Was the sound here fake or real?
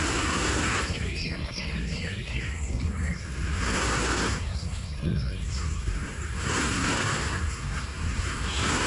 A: fake